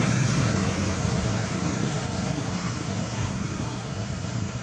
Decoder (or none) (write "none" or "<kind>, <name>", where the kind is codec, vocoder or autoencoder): codec, SNAC